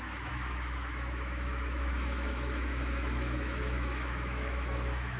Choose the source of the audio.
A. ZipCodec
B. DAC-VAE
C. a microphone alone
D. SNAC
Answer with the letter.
B